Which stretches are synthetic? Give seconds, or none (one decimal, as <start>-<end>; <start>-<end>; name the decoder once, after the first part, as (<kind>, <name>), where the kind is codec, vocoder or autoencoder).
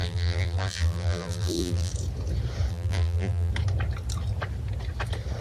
0.0-1.9 (vocoder, BigVGAN v2); 2.7-3.5